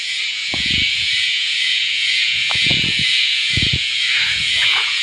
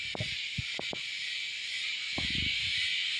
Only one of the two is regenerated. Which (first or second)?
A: first